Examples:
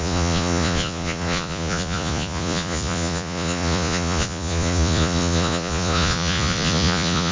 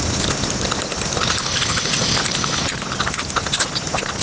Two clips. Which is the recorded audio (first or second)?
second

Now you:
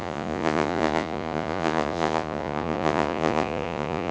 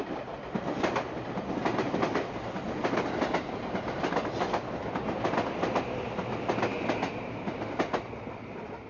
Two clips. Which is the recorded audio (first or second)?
second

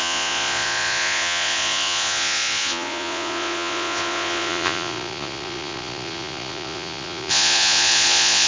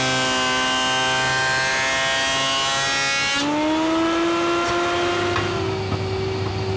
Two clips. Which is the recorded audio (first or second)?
second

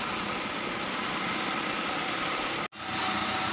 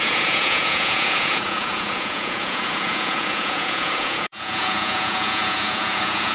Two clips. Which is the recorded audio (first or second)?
first